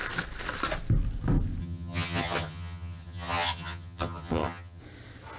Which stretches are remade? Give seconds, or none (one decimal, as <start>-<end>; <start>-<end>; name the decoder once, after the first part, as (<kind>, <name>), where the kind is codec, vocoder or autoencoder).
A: 1.6-4.8 (vocoder, HiFi-GAN)